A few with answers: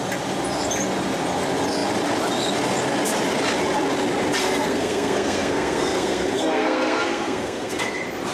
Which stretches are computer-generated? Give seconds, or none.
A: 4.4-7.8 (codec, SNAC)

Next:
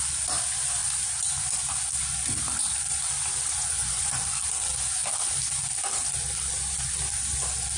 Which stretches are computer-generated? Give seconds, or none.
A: 3.5-4.1 (vocoder, Vocos)

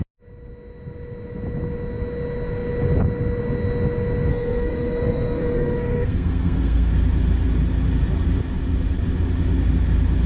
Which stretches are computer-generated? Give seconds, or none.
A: 4.3-6.9 (codec, SNAC)

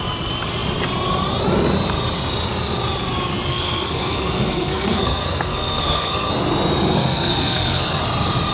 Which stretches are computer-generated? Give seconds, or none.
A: 3.5-6.3 (codec, SNAC); 6.9-8.0

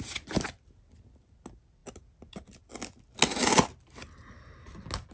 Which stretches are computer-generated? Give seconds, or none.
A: none